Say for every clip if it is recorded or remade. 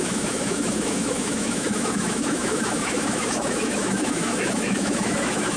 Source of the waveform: remade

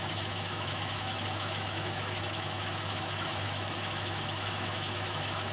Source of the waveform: remade